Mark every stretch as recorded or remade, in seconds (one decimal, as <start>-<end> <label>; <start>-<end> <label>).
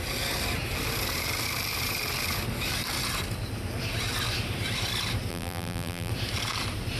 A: 0.0-5.3 recorded; 5.3-6.1 remade; 6.1-7.0 recorded